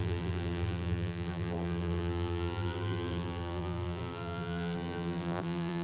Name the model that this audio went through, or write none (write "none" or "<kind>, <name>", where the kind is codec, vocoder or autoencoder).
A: vocoder, BigVGAN v2